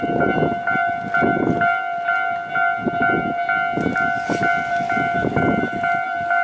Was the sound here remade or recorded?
recorded